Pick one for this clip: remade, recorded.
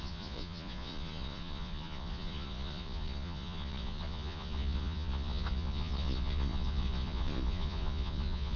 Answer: remade